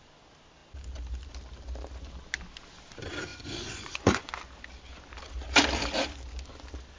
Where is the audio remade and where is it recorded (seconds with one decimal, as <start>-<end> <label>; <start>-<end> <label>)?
0.0-3.3 recorded; 3.3-4.3 remade; 4.3-7.0 recorded